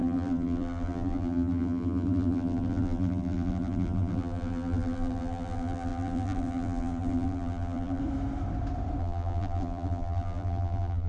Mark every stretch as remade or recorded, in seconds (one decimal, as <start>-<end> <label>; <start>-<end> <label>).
0.0-8.0 remade; 8.0-9.0 recorded; 9.0-11.1 remade